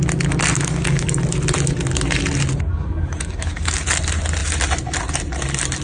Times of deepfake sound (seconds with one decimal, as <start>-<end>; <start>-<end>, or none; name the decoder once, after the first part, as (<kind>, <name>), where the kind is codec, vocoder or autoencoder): 0.5-1.2 (codec, DAC); 2.7-3.8